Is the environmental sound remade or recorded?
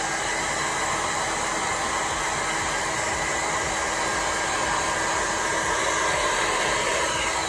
recorded